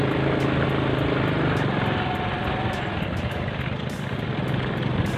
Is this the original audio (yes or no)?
yes